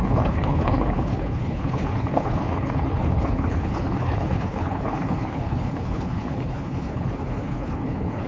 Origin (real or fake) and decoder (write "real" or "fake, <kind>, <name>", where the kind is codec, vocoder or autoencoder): fake, codec, HILCodec